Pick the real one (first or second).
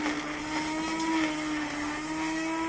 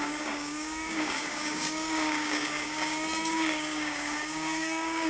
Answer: first